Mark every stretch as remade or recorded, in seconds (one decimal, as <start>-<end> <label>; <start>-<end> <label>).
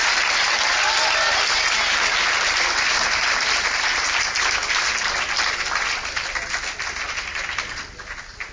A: 0.0-8.5 recorded